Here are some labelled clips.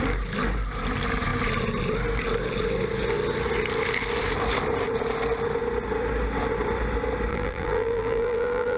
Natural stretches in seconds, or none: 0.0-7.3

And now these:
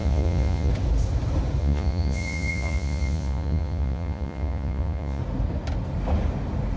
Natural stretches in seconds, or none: 0.7-1.6; 5.2-6.8